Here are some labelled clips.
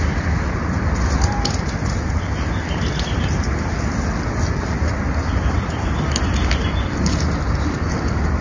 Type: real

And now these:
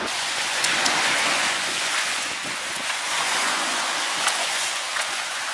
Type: fake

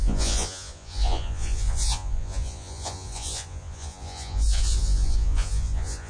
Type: fake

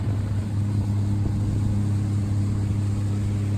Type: real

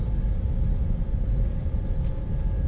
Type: real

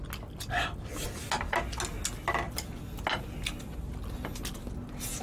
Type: real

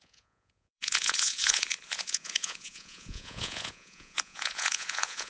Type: fake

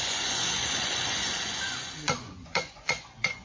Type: fake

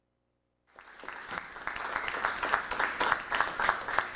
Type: real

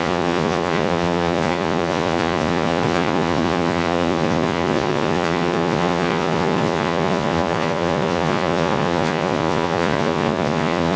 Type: fake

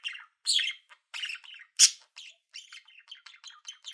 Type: real